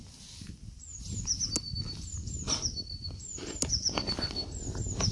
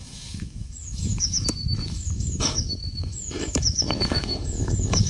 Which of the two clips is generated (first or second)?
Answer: second